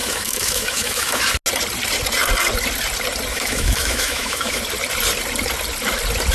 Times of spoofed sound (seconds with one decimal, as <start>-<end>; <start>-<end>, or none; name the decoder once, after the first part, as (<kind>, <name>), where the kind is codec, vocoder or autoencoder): 0.0-1.2 (autoencoder, DAC-VAE); 3.3-4.6